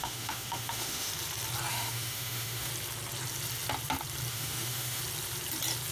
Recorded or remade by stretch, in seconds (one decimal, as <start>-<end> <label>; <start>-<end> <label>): 0.0-1.1 remade; 1.1-1.7 recorded; 1.7-2.7 remade; 2.7-4.3 recorded; 4.3-5.0 remade; 5.0-5.9 recorded